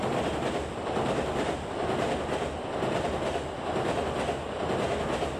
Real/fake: real